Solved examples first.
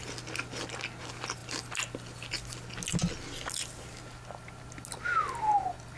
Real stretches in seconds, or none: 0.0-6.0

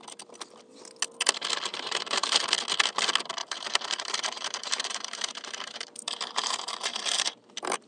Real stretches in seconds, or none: 0.0-1.7; 2.4-3.4; 7.5-7.9

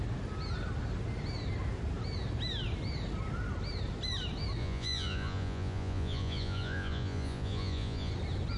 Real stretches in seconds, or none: 0.0-4.6; 8.1-8.6

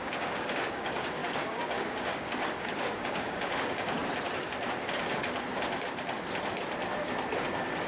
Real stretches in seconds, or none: 4.0-7.9

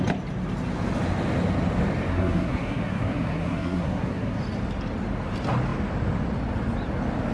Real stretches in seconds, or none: 0.0-2.1; 4.4-7.3